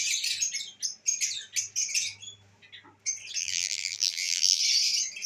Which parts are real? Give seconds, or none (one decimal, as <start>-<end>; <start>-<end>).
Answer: 0.0-3.4; 4.6-5.3